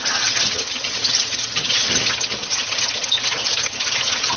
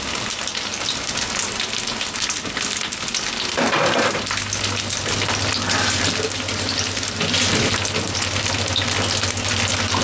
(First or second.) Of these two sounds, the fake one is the first